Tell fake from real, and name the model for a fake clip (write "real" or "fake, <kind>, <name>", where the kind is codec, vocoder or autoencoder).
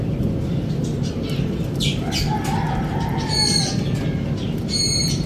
real